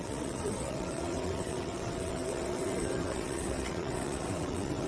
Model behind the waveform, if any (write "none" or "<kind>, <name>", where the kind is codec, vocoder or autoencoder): vocoder, WaveNeXt